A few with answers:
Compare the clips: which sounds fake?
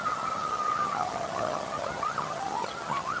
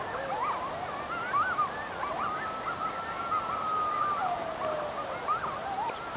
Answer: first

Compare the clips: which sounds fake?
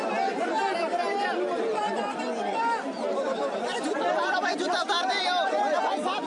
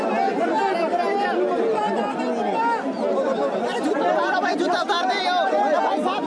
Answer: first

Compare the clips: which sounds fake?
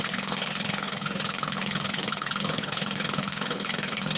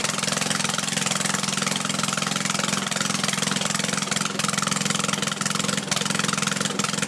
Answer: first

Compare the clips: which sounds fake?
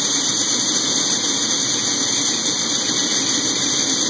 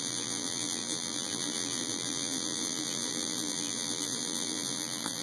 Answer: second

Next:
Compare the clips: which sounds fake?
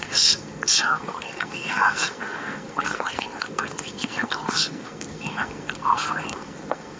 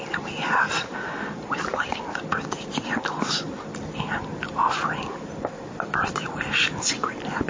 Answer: first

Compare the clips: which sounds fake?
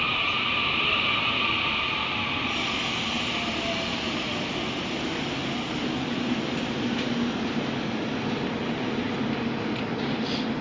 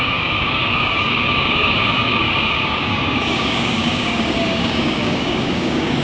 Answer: second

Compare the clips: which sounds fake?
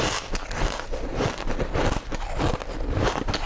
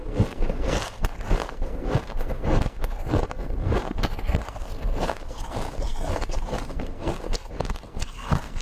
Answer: second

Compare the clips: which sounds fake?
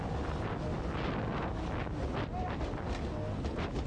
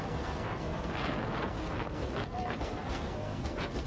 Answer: second